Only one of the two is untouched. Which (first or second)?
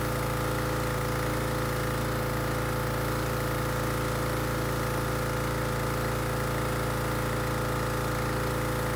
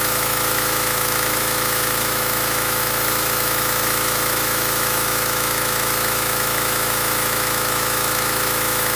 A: first